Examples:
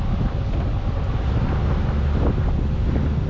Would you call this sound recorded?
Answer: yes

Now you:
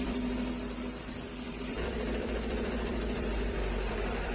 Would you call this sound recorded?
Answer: no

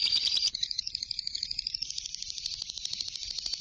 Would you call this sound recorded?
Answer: no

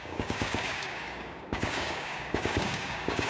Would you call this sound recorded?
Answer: no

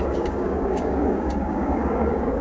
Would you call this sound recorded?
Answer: no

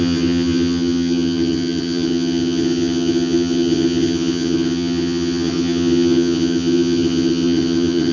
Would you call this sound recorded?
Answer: no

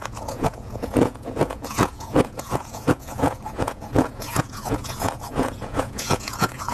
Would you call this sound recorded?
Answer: no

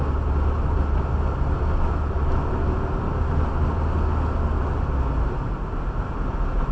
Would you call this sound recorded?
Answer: yes